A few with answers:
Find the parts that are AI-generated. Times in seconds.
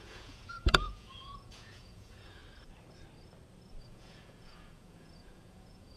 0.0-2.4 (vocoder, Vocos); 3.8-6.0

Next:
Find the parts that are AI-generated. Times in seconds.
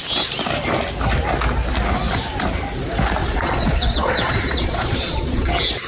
3.2-5.5 (vocoder, Vocos)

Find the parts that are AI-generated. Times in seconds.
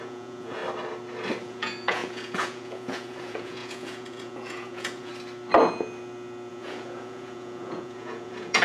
0.0-0.6 (vocoder, Vocos); 1.4-5.1; 6.5-8.6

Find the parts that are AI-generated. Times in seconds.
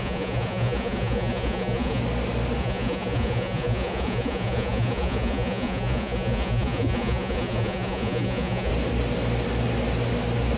0.0-2.0 (vocoder, Vocos); 2.6-8.7